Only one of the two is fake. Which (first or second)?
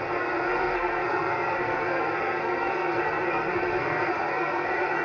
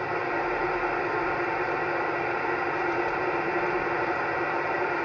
first